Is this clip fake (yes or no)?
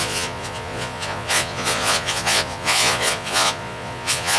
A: yes